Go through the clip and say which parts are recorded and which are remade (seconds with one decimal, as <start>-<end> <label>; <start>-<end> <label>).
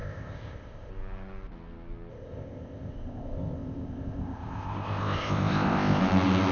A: 0.0-0.9 remade; 0.9-2.1 recorded; 2.1-6.0 remade; 6.0-6.5 recorded